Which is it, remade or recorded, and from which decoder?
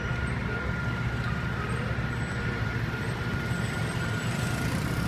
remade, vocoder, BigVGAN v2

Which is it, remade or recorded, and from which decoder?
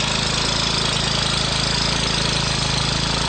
recorded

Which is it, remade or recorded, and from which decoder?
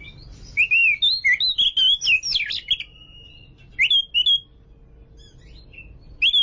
recorded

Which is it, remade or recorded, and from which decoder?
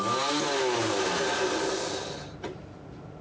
recorded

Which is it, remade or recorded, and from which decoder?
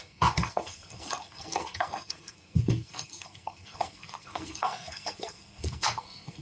remade, codec, SNAC